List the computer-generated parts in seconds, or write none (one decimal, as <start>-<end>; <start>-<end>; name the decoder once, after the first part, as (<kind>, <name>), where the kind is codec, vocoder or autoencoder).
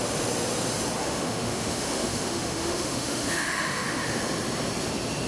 1.0-4.2 (autoencoder, DAC-VAE)